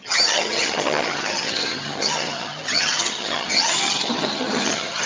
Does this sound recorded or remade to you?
remade